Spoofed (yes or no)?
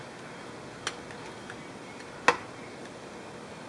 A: no